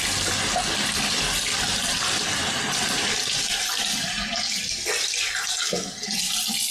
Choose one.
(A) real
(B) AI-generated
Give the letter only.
A